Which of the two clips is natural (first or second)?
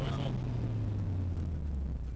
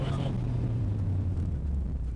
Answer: first